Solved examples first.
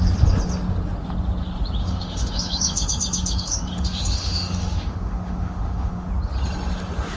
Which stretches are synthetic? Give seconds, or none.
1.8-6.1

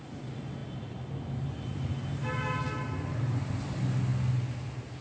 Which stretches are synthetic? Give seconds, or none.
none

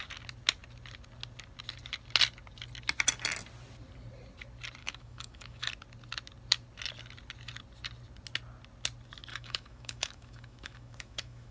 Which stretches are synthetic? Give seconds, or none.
4.8-5.7; 9.3-11.5

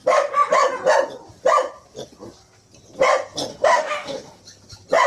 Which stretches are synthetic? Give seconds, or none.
3.5-4.4

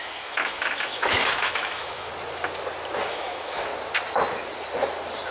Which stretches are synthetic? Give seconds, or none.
0.0-2.1; 3.0-3.7